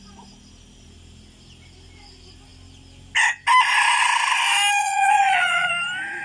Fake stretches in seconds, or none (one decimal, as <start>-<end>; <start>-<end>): 4.8-5.7